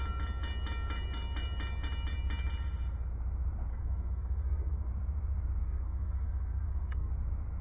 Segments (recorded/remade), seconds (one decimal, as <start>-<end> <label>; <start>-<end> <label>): 0.0-3.7 recorded; 3.7-4.9 remade; 4.9-5.6 recorded; 5.6-7.1 remade; 7.1-7.6 recorded